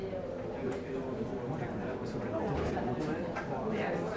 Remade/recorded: recorded